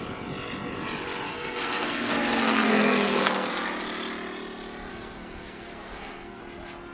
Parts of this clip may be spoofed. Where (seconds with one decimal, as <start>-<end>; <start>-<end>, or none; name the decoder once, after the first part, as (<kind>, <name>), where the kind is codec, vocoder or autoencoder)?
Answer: 1.3-3.5 (codec, SNAC); 4.9-6.4